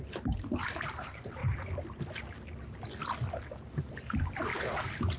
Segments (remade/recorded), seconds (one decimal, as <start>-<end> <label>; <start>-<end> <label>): 0.0-1.4 remade; 1.4-3.8 recorded; 3.8-4.5 remade; 4.5-5.2 recorded